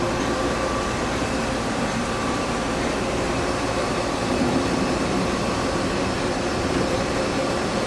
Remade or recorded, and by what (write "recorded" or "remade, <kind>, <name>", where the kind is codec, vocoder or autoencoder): remade, vocoder, BigVGAN v2